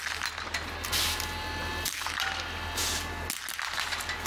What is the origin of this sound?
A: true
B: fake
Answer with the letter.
A